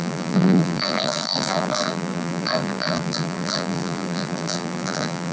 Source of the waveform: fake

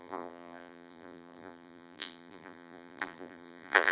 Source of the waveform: fake